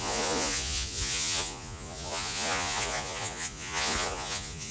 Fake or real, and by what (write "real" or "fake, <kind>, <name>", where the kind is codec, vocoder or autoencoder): fake, vocoder, Vocos